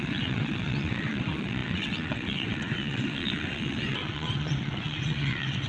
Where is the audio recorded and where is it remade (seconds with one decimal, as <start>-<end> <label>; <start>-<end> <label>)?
0.0-5.7 remade